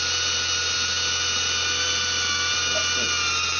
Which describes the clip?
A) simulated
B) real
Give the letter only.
B